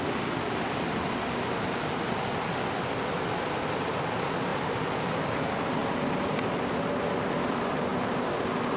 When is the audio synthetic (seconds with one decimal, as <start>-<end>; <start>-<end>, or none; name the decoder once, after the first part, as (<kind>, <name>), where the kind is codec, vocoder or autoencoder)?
5.8-6.6 (vocoder, BigVGAN v2)